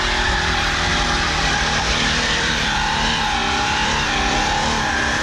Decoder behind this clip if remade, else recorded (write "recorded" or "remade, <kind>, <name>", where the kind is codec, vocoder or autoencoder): remade, vocoder, BigVGAN v2